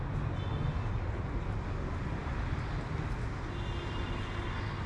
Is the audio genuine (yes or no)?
yes